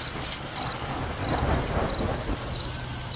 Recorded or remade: recorded